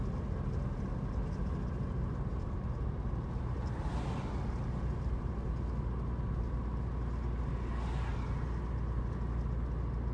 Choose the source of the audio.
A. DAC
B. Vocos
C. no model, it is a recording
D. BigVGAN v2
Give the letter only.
C